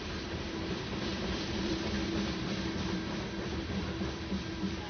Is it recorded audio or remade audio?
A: remade